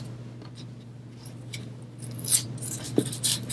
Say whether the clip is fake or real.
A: real